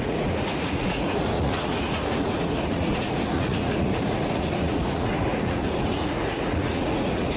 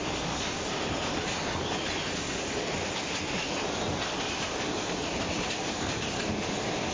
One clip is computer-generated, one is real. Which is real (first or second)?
second